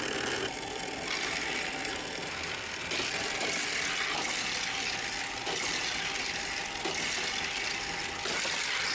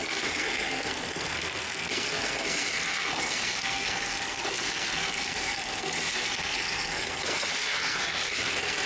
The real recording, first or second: first